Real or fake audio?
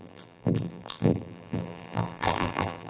fake